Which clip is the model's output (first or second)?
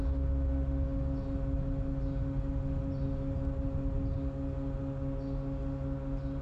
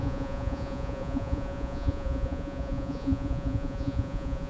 second